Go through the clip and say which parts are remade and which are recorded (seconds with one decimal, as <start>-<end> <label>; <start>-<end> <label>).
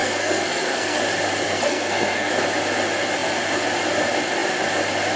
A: 0.0-1.0 remade; 1.0-1.4 recorded; 1.4-2.3 remade; 2.3-5.2 recorded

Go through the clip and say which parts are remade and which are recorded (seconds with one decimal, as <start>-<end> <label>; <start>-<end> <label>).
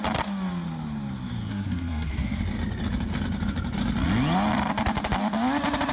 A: 0.0-1.5 recorded; 1.5-2.4 remade; 2.4-5.9 recorded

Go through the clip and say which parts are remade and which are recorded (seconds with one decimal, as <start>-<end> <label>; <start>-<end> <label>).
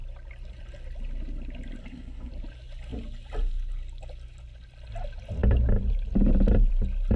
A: 0.0-1.8 recorded; 1.8-2.3 remade; 2.3-7.2 recorded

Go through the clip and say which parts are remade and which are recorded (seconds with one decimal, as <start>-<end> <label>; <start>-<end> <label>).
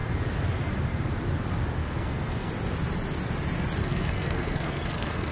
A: 0.0-1.8 recorded; 1.8-2.5 remade; 2.5-3.8 recorded; 3.8-5.3 remade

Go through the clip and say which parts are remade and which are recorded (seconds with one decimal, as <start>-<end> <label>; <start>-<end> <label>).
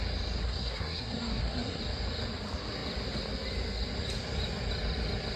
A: 0.0-0.4 recorded; 0.4-1.8 remade; 1.8-5.4 recorded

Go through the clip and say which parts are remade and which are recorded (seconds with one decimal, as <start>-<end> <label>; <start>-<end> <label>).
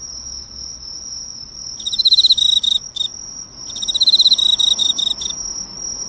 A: 0.0-6.1 recorded